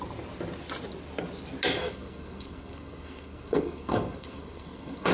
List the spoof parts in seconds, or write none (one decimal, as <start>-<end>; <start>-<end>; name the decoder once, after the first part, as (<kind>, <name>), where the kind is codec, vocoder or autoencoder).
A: 1.8-5.1 (codec, SNAC)